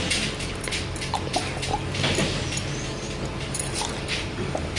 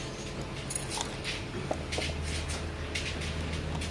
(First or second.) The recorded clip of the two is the second